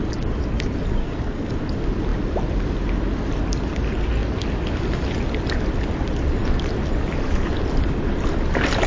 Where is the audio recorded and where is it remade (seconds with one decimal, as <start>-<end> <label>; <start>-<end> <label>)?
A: 0.0-1.0 recorded; 1.0-1.5 remade; 1.5-8.9 recorded